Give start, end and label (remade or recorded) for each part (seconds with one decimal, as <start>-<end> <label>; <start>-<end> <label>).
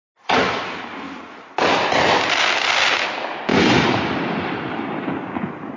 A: 0.0-5.8 recorded